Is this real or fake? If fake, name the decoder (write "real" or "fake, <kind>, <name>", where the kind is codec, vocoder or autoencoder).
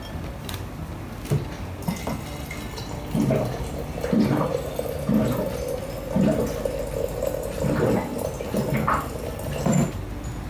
real